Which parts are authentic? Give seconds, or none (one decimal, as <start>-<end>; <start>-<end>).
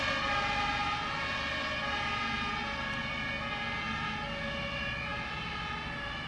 0.0-6.3